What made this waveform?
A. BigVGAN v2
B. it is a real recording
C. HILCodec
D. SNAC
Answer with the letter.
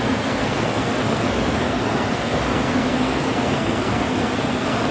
D